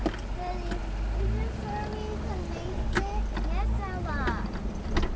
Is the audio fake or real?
real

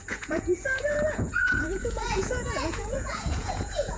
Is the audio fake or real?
fake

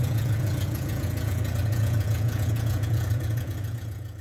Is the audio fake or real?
fake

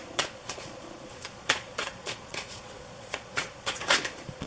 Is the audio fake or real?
fake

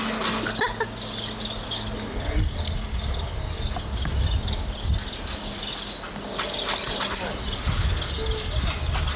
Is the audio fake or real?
real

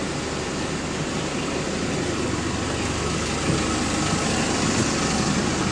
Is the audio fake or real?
real